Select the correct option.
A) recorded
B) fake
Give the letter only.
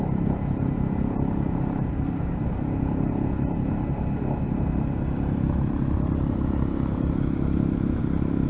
B